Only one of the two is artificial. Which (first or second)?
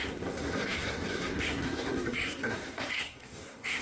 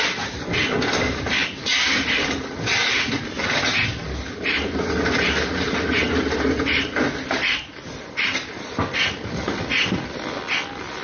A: first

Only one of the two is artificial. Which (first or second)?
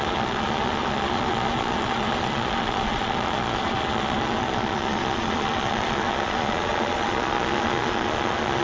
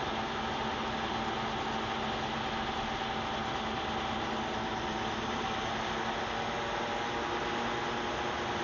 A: first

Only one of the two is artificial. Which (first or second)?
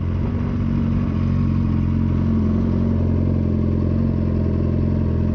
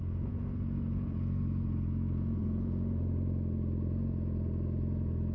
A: second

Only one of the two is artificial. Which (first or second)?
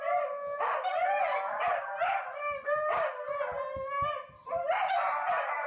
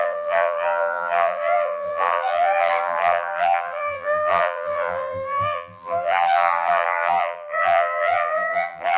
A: second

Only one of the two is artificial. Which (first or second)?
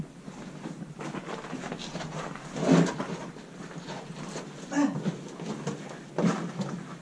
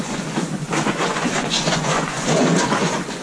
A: second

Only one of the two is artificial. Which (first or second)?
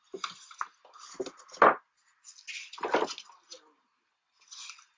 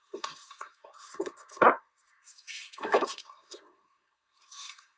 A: second